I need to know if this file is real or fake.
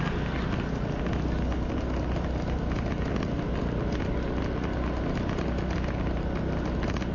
real